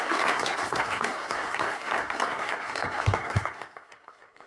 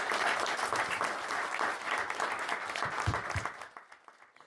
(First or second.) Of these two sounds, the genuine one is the second